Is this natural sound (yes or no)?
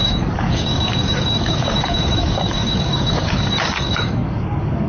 no